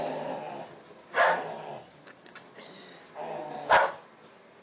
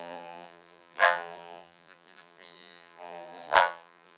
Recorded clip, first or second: first